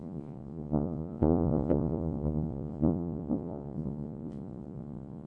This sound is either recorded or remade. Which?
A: remade